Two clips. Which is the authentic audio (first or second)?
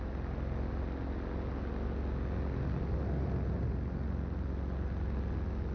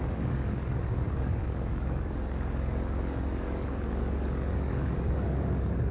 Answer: first